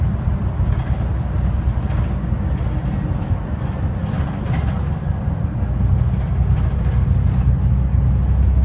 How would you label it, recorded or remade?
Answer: recorded